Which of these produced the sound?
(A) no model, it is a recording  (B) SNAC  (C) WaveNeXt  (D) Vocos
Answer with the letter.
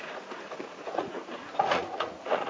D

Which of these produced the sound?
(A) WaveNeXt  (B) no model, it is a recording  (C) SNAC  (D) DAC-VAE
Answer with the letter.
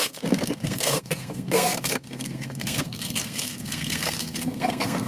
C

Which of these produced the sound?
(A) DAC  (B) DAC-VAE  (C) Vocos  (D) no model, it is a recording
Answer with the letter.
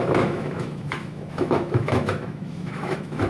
B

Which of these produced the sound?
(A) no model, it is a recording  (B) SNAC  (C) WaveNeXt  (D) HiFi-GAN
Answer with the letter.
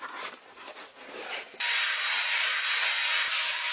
A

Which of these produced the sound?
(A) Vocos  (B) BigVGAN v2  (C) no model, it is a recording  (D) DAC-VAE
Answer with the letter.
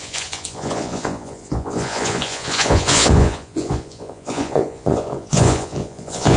A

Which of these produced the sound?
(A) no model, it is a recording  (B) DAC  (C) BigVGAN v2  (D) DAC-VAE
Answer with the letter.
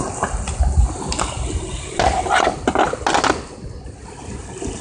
A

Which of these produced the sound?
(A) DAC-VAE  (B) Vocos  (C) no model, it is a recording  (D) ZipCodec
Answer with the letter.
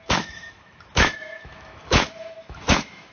A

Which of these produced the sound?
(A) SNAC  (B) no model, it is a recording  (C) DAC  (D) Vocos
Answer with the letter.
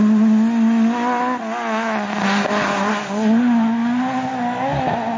B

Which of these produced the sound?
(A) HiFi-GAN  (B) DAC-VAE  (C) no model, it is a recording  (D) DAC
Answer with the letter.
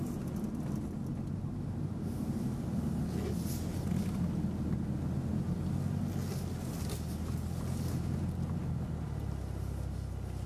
C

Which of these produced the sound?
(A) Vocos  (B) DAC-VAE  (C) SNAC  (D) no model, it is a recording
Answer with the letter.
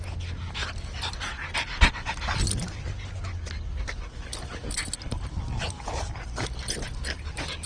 D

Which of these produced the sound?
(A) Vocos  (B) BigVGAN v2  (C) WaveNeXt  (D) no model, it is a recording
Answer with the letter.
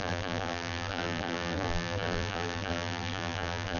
B